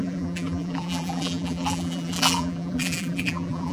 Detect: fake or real fake